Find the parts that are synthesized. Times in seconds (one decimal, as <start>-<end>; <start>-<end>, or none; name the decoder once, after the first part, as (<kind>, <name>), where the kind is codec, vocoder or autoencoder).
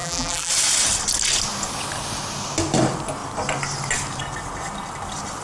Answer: 0.0-0.5 (vocoder, BigVGAN v2)